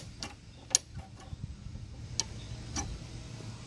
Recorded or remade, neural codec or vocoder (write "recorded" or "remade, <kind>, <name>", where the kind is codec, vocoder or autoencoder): recorded